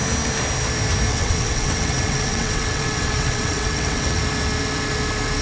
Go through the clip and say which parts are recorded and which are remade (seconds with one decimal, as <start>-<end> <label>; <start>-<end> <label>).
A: 0.0-1.1 recorded; 1.1-4.2 remade; 4.2-5.4 recorded